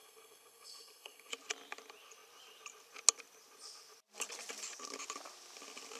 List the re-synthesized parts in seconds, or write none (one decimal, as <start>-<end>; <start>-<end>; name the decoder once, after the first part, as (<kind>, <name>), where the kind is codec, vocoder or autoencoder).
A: 0.0-1.3 (codec, SNAC)